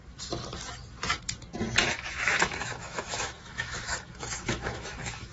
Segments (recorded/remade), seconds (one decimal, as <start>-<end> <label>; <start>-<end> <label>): 0.0-1.8 recorded; 1.8-5.3 remade